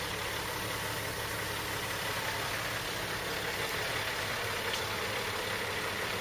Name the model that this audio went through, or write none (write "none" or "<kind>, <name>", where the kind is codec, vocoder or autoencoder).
none